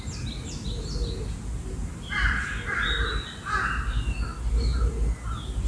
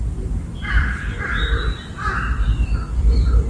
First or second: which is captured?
first